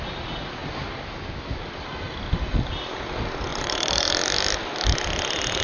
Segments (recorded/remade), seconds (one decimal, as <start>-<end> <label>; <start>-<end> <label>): 0.0-3.5 recorded; 3.5-4.1 remade; 4.1-5.6 recorded